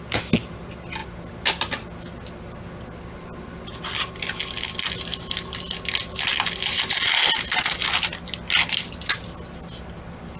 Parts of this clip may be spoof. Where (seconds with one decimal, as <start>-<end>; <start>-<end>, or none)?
none